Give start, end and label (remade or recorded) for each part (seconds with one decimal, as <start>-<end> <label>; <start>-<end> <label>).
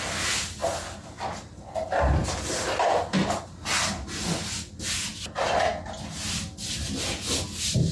0.0-7.9 recorded